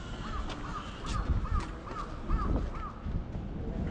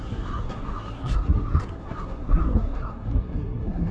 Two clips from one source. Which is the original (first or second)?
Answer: first